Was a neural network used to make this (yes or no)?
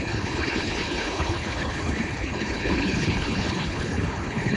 yes